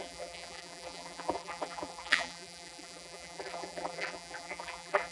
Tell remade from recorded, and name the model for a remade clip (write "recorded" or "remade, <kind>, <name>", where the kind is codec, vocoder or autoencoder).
remade, vocoder, BigVGAN v2